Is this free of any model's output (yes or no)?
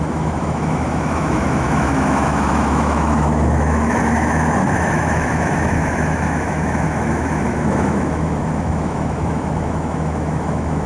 no